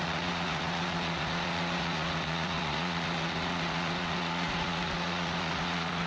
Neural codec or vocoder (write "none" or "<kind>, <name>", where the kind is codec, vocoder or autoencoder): vocoder, Vocos